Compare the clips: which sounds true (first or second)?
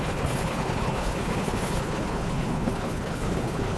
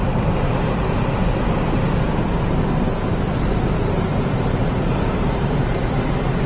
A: second